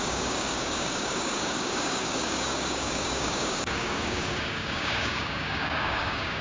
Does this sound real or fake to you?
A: fake